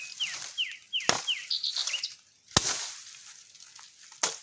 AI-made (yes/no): no